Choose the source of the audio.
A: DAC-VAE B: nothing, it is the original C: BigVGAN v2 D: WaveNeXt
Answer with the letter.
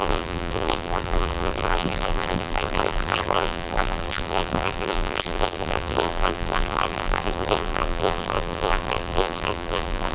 C